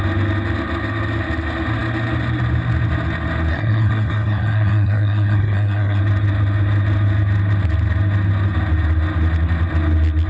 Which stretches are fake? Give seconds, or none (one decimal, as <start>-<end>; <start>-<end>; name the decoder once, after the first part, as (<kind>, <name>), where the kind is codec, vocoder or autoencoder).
3.5-6.0 (codec, SNAC)